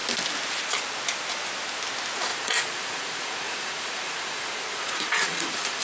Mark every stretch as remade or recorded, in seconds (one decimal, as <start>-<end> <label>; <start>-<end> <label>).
0.0-2.3 recorded; 2.3-5.8 remade